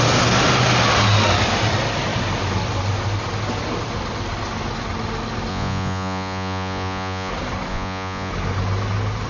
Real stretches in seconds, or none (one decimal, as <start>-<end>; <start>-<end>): 0.0-5.5; 7.3-7.7; 8.3-9.3